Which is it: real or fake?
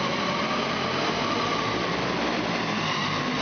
real